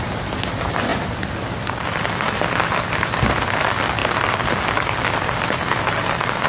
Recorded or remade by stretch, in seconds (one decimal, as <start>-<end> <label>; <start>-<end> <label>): 0.0-6.5 recorded